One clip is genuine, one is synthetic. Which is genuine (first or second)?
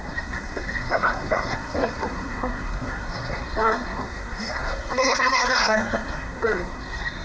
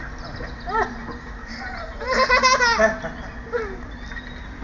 second